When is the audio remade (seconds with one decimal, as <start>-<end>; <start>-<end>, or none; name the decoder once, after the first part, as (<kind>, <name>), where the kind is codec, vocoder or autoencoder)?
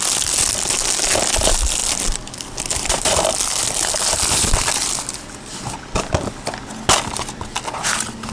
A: 1.8-5.2 (vocoder, BigVGAN v2)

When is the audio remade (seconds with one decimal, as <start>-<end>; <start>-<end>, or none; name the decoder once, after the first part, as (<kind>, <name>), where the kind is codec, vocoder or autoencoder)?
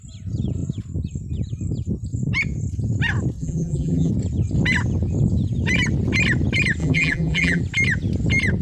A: 3.4-4.1 (vocoder, BigVGAN v2); 6.8-7.6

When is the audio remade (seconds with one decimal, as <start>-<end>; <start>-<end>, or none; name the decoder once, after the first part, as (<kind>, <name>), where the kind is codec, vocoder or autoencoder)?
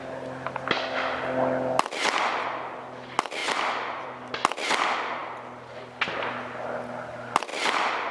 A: 3.4-4.3 (vocoder, BigVGAN v2)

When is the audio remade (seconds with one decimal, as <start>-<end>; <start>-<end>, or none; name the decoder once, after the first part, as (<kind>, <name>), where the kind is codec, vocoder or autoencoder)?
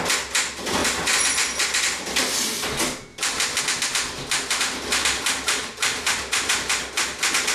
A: 0.8-2.5 (vocoder, BigVGAN v2); 3.1-3.6; 5.6-6.5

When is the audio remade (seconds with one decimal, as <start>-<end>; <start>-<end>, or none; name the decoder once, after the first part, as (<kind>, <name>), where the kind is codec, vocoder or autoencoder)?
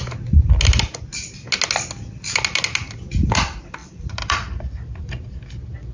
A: 3.8-5.1 (vocoder, BigVGAN v2)